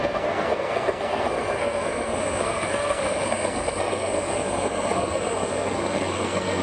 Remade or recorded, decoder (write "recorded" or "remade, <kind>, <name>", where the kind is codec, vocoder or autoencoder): remade, codec, SNAC